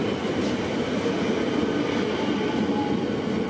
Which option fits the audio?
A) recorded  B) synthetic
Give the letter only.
A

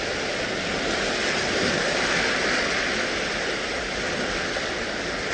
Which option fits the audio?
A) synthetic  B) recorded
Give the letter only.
B